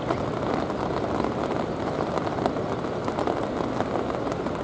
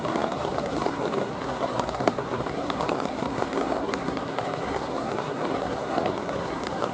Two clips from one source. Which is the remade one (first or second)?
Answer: second